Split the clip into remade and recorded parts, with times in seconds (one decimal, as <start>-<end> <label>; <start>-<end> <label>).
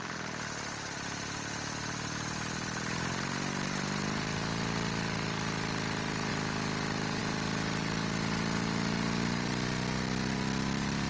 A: 0.0-11.1 recorded